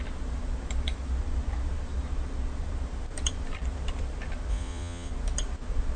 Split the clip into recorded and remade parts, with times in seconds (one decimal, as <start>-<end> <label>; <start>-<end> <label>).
0.0-4.5 recorded; 4.5-5.1 remade; 5.1-6.0 recorded